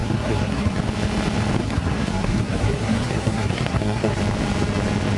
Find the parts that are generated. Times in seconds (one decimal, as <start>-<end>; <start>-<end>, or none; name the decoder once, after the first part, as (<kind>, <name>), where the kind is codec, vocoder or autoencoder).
0.0-0.8 (codec, SNAC); 1.6-4.2